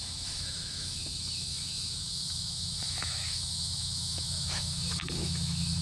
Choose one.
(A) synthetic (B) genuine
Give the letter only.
A